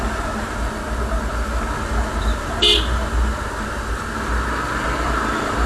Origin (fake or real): real